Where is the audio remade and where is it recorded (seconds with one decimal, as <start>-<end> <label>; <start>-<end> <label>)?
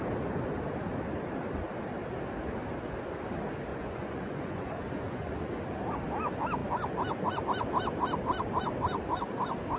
0.0-3.7 recorded; 3.7-5.6 remade; 5.6-9.8 recorded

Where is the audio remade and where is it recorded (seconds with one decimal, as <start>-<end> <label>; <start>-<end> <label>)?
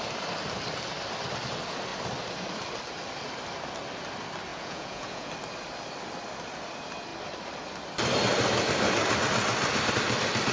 0.0-4.5 recorded; 4.5-5.3 remade; 5.3-10.5 recorded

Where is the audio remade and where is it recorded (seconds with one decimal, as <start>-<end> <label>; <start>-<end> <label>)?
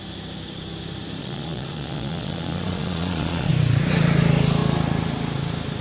0.0-1.2 recorded; 1.2-3.5 remade; 3.5-5.8 recorded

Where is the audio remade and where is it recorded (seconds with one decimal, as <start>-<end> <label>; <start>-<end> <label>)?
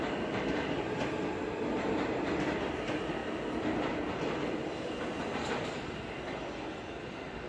0.0-7.5 recorded